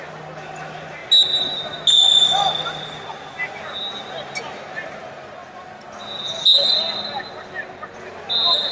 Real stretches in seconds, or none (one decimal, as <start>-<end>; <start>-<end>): 0.0-8.7